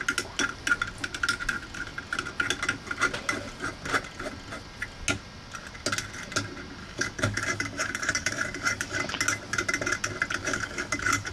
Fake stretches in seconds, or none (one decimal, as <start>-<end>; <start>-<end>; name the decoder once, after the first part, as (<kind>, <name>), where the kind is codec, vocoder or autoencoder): 6.8-9.0 (codec, DAC); 10.4-11.3